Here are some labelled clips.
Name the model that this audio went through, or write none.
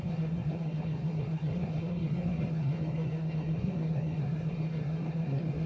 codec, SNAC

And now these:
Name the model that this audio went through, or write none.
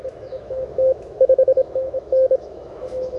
autoencoder, DAC-VAE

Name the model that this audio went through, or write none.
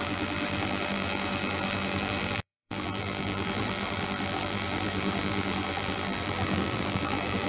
vocoder, BigVGAN v2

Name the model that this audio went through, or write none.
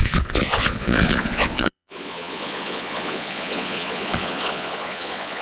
vocoder, Vocos